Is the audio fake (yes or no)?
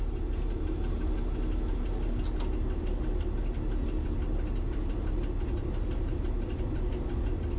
no